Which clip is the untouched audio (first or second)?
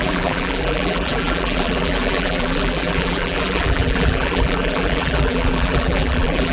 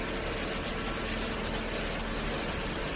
second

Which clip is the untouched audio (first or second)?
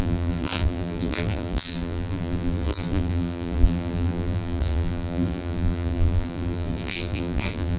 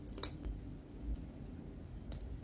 second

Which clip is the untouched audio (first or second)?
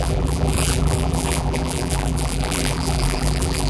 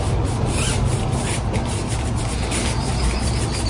second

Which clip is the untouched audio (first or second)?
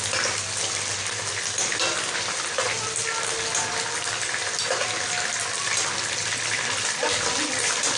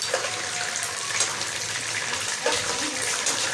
first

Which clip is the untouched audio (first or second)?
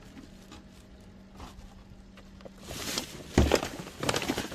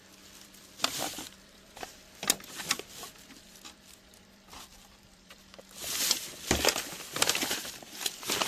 first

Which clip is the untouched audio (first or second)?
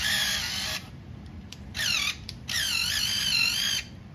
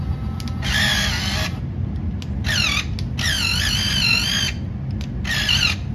second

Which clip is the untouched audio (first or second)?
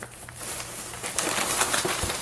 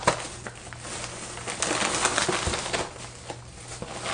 second